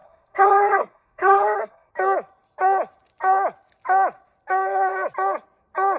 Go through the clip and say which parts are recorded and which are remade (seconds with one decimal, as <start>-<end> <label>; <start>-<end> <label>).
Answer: 0.0-1.9 remade; 1.9-6.0 recorded